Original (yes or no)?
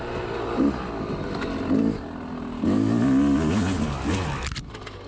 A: yes